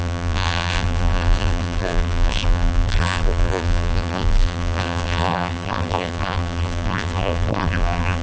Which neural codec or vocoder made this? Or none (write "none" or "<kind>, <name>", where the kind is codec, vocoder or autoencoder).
vocoder, BigVGAN v2